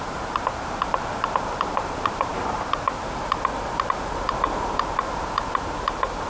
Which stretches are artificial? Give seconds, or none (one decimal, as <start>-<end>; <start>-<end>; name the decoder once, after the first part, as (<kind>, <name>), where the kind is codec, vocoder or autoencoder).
0.0-6.3 (vocoder, BigVGAN v2)